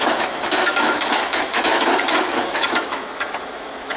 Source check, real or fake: fake